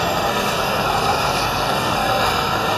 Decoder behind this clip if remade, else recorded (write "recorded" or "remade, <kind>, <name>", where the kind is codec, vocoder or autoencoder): remade, codec, SNAC